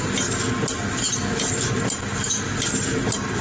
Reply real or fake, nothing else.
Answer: real